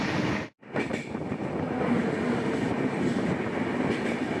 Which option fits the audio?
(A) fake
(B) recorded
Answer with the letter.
B